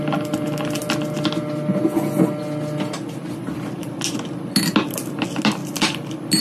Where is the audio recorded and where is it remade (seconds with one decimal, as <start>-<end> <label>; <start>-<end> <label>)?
0.0-6.4 recorded